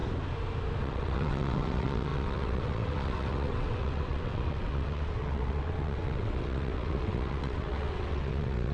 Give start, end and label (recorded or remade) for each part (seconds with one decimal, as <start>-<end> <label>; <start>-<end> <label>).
0.0-0.8 recorded; 0.8-8.7 remade